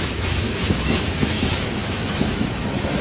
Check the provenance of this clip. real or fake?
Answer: fake